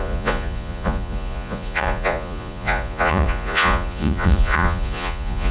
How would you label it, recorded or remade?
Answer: remade